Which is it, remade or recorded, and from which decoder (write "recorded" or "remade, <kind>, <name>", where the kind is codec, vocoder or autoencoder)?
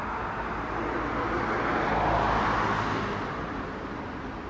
recorded